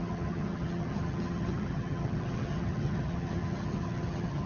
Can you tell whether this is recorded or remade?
remade